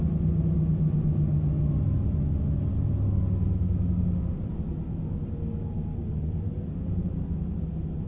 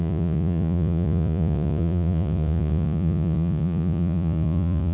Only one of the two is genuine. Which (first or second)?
first